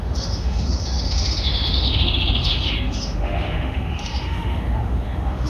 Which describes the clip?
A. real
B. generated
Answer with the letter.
B